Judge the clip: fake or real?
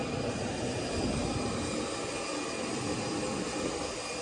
real